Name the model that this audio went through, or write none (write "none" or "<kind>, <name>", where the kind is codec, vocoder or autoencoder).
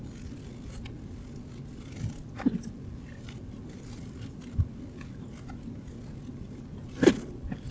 none